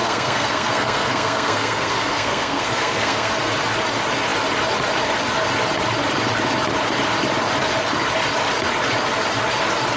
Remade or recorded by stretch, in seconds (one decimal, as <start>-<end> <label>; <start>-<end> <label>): 0.0-3.3 remade; 3.3-10.0 recorded